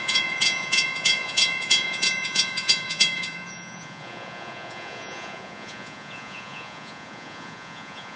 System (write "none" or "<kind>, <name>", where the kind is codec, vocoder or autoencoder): vocoder, Vocos